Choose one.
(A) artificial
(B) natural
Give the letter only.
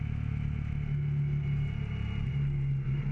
B